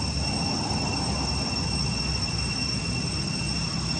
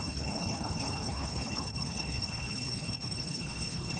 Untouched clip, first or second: first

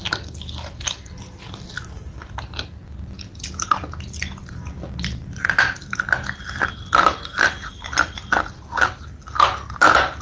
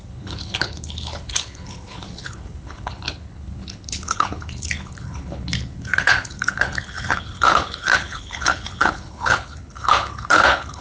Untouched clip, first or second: first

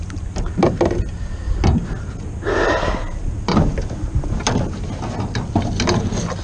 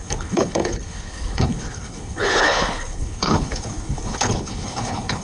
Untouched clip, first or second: first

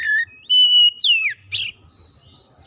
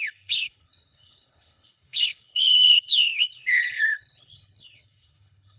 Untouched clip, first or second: first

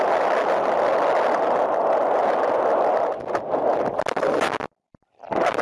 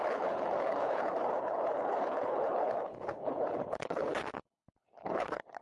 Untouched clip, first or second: first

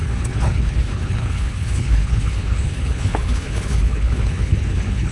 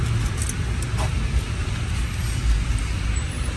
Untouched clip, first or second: second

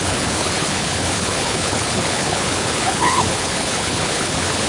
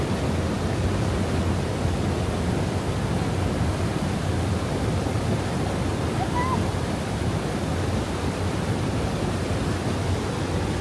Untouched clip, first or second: second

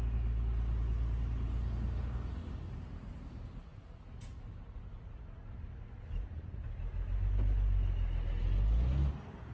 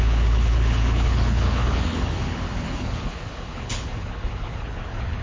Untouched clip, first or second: first